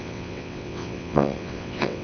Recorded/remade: remade